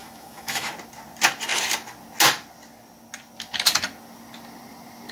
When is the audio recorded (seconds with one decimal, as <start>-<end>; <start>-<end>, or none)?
0.7-5.1